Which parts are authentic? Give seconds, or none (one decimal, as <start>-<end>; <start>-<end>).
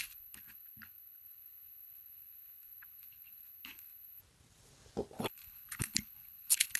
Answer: 4.2-5.2